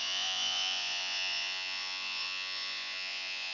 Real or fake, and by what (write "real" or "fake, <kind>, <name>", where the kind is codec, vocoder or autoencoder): fake, vocoder, Vocos